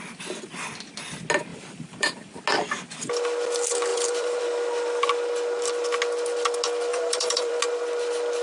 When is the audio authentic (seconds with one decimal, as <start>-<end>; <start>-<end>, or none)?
0.0-1.5; 2.4-3.9; 4.4-6.9; 7.5-8.4